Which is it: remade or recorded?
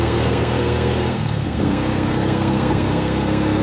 remade